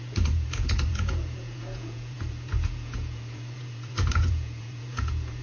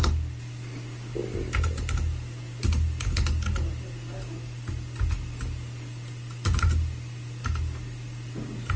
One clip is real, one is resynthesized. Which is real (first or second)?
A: second